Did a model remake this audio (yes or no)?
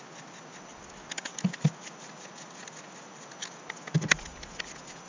no